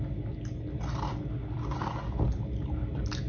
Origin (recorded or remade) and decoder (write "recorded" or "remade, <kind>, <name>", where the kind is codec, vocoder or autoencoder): recorded